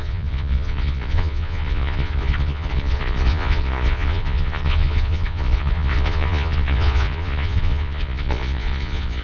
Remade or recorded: remade